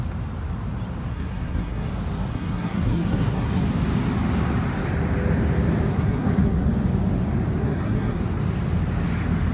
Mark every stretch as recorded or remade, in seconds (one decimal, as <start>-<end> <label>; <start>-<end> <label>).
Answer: 0.0-1.1 recorded; 1.1-1.9 remade; 1.9-2.3 recorded; 2.3-3.6 remade; 3.6-5.9 recorded; 5.9-6.7 remade; 6.7-7.6 recorded; 7.6-8.2 remade; 8.2-9.5 recorded